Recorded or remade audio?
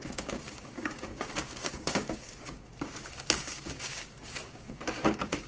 remade